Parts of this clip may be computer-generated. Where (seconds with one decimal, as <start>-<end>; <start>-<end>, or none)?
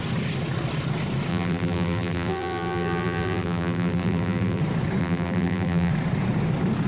1.3-4.6; 5.0-5.9